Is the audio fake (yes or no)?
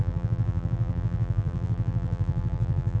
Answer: yes